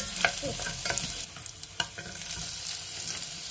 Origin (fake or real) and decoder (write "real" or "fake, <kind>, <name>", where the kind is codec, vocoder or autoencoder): real